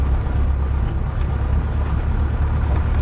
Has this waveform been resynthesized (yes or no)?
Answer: no